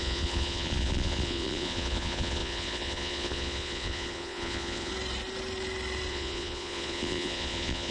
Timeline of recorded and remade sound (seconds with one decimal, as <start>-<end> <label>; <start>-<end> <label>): 0.0-4.9 remade; 4.9-6.1 recorded; 6.1-7.9 remade

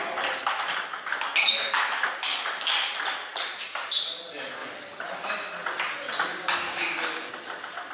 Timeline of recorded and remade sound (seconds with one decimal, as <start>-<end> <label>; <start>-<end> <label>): 0.0-6.3 recorded; 6.3-7.3 remade; 7.3-7.9 recorded